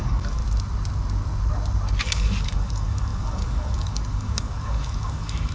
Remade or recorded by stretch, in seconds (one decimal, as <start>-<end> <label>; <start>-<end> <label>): 0.0-0.4 remade; 0.4-2.0 recorded; 2.0-5.5 remade